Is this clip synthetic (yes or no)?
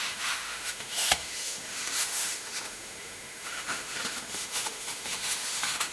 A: yes